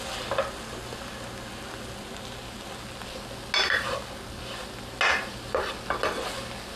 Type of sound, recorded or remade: recorded